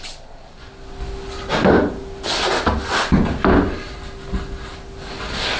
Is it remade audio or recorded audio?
recorded